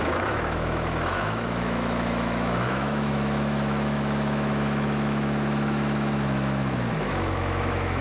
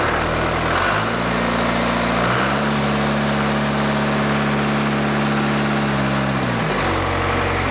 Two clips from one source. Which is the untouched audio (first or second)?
second